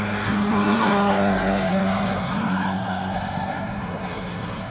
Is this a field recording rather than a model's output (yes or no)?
no